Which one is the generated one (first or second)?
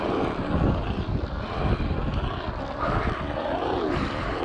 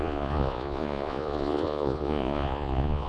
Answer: second